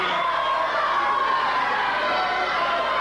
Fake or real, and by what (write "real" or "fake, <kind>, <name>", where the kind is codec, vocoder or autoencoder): real